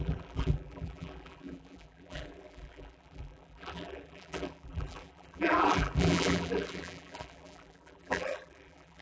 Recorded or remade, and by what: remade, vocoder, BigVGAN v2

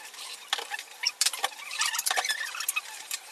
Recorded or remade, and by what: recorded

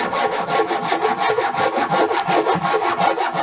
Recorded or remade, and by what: recorded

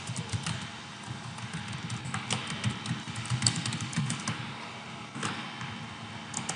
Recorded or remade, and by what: recorded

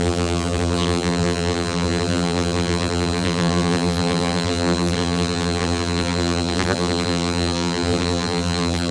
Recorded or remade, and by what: remade, vocoder, BigVGAN v2